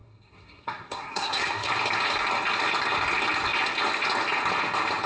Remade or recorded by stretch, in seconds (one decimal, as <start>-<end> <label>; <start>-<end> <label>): 0.0-1.7 remade; 1.7-5.1 recorded